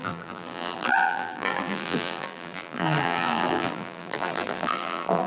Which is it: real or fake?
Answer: fake